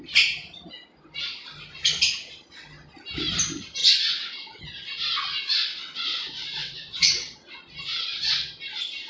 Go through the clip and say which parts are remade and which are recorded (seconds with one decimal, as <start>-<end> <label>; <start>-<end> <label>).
0.0-3.8 recorded; 3.8-4.6 remade; 4.6-5.7 recorded; 5.7-7.6 remade; 7.6-8.1 recorded; 8.1-8.6 remade; 8.6-9.1 recorded